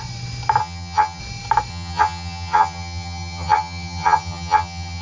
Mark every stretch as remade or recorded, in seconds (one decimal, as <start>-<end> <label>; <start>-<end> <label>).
0.0-0.6 recorded; 0.6-1.2 remade; 1.2-1.7 recorded; 1.7-5.0 remade